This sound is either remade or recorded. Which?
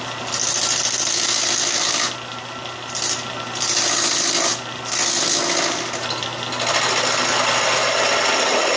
recorded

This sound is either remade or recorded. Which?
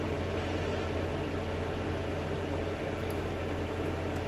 recorded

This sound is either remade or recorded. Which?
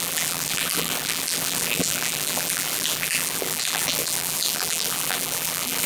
remade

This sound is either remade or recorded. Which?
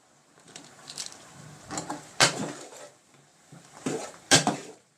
remade